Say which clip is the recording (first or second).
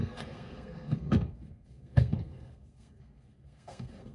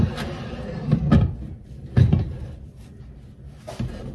second